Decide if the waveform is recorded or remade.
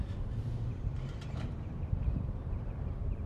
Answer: remade